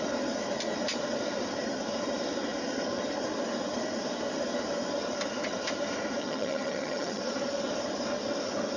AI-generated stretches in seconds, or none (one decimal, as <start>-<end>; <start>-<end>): 6.2-7.2